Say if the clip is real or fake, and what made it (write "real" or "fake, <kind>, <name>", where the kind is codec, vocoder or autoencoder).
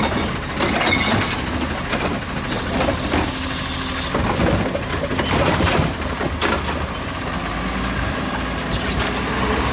real